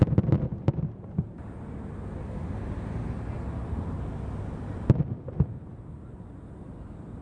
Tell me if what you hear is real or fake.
real